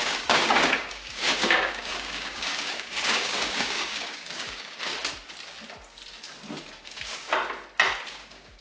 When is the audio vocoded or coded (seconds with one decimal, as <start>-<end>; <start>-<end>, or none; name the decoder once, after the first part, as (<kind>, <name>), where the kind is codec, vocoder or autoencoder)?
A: 0.0-4.9 (codec, DAC); 6.8-7.4; 8.1-8.6